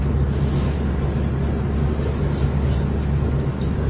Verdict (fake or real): real